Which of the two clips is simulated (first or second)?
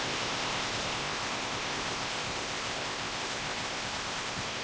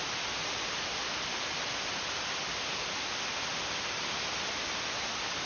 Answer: first